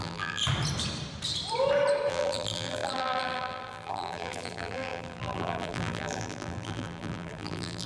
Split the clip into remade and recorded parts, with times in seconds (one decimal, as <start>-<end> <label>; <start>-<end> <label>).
0.0-0.4 remade; 0.4-2.1 recorded; 2.1-7.9 remade